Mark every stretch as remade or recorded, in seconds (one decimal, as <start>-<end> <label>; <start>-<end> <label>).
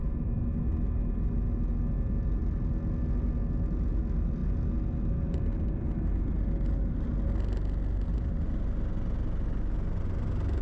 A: 0.0-10.6 recorded